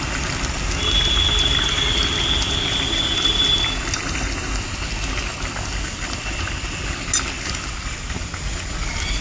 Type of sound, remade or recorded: recorded